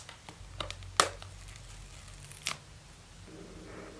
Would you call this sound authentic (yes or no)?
yes